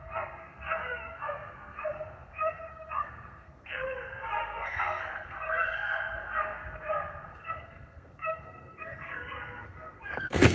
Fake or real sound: fake